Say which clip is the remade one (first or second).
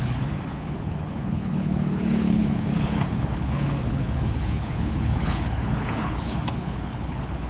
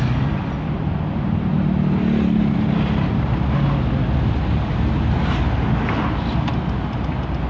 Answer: first